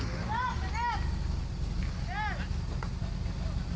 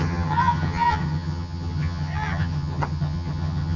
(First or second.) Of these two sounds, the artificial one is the second